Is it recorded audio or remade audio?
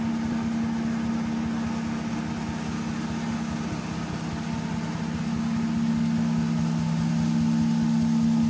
recorded